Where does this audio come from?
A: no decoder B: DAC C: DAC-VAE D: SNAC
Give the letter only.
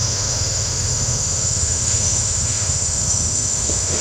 C